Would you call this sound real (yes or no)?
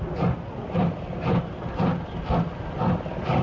yes